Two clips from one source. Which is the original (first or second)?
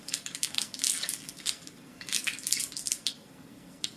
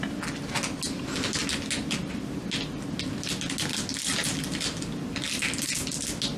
second